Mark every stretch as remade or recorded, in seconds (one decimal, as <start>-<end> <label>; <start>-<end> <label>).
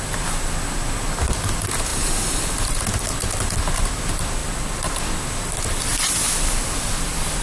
0.0-1.9 recorded; 1.9-2.8 remade; 2.8-4.4 recorded; 4.4-5.0 remade; 5.0-7.4 recorded